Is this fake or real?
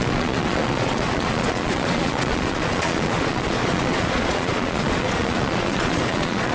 fake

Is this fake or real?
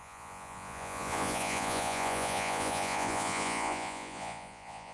fake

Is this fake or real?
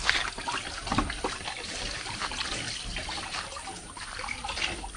real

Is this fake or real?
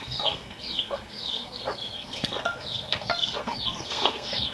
fake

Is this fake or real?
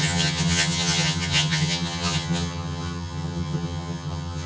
fake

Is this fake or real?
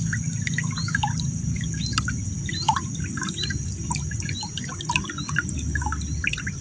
real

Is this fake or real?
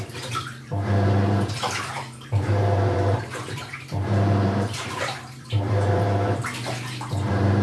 fake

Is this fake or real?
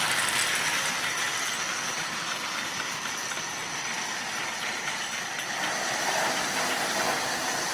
real